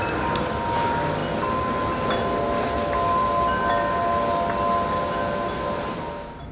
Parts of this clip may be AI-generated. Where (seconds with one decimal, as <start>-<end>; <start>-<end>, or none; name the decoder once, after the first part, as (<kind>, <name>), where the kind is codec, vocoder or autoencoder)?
none